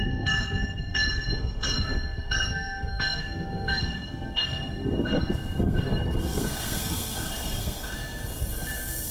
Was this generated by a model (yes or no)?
yes